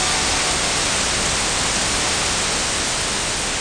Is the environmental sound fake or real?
real